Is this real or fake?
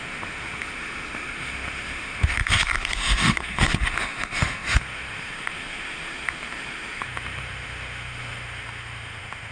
fake